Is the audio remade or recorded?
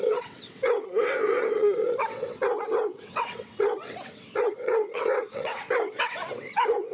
remade